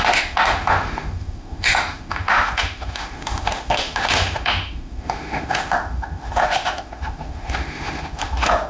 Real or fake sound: fake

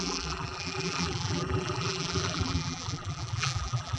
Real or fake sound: fake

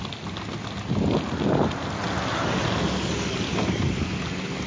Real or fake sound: real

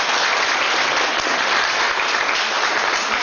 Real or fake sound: real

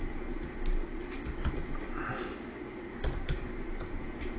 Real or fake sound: real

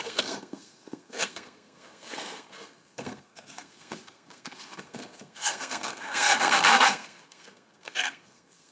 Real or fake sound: fake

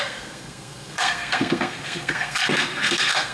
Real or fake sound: fake